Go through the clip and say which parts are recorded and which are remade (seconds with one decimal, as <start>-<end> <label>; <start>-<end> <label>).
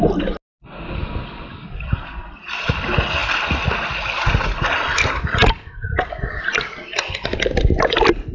0.0-8.3 recorded